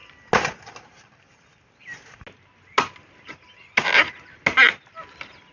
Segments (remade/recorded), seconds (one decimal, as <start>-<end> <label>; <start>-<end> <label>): 0.0-5.5 recorded